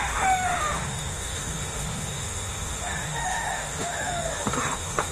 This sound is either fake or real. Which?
fake